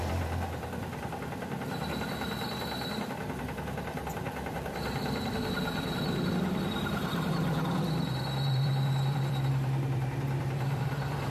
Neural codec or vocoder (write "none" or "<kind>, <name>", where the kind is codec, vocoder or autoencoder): vocoder, BigVGAN v2